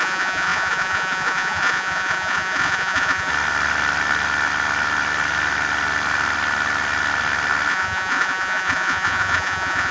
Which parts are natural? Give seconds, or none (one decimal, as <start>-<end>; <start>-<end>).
3.3-7.7